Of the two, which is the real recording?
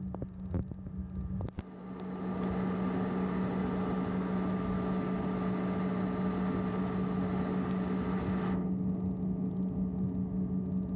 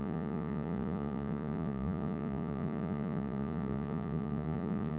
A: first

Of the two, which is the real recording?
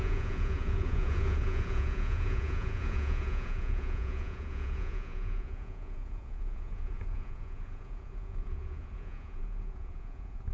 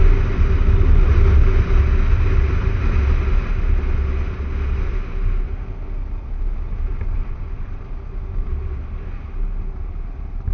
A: second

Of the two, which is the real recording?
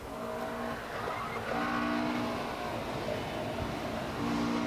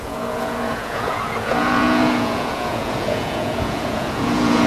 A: first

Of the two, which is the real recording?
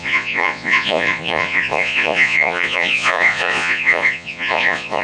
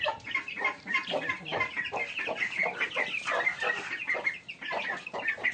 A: second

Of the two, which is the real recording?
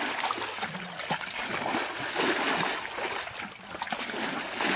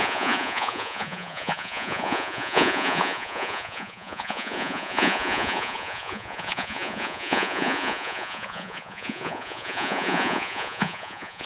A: first